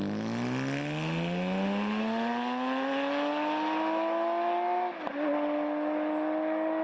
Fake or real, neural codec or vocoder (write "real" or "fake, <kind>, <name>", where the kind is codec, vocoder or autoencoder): real